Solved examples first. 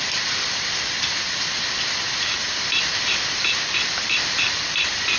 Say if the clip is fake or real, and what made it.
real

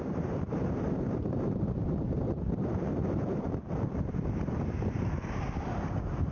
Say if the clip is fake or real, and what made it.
fake, vocoder, BigVGAN v2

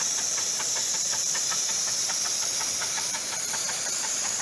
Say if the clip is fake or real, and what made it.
fake, vocoder, BigVGAN v2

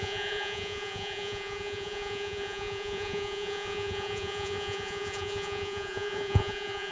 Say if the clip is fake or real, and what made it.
fake, vocoder, Vocos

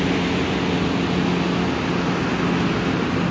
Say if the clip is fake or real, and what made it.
real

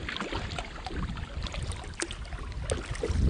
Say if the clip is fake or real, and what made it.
real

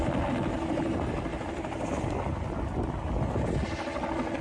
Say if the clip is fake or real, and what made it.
real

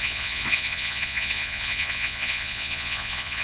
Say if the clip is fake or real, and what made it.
fake, vocoder, Vocos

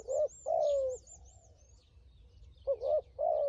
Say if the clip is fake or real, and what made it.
real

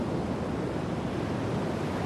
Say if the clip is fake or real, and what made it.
real